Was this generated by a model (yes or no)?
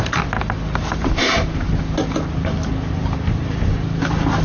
no